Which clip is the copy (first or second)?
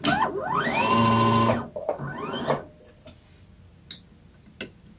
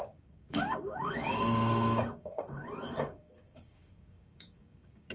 second